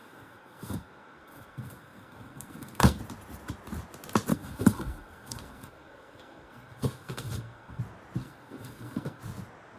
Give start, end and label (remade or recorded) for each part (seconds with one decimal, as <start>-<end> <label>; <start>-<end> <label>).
0.0-3.0 remade; 3.0-4.3 recorded; 4.3-7.8 remade; 7.8-8.2 recorded; 8.2-9.2 remade; 9.2-9.8 recorded